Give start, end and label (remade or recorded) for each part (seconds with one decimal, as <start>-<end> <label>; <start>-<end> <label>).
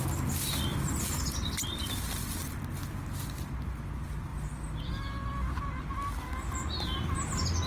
0.0-7.7 recorded